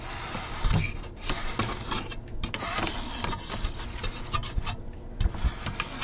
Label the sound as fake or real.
real